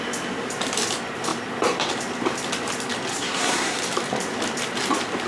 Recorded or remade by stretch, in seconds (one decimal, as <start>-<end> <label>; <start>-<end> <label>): 0.0-3.1 recorded; 3.1-3.8 remade; 3.8-5.3 recorded